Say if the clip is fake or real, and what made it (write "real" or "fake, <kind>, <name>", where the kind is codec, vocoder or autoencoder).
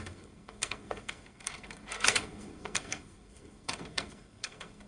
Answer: fake, codec, SNAC